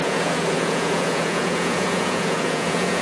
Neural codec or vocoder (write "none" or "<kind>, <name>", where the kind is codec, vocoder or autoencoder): vocoder, Vocos